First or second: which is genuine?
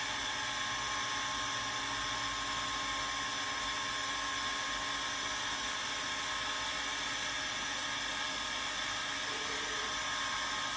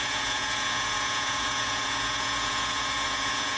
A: first